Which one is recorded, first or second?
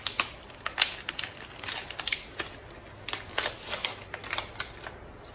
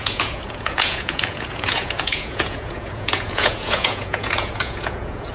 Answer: first